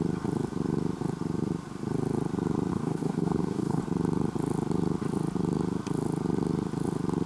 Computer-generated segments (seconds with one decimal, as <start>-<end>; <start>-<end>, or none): 2.7-3.8